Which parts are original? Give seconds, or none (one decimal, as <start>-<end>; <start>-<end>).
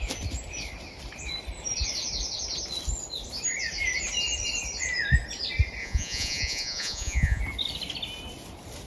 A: 0.0-5.8; 7.4-8.9